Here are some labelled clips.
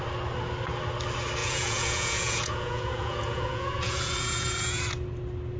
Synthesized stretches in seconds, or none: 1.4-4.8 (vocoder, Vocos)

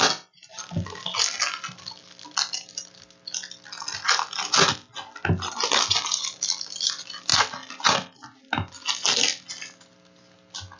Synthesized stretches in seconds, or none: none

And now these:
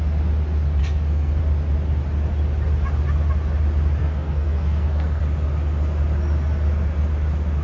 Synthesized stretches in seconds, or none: 0.8-1.4 (codec, SNAC); 4.0-5.2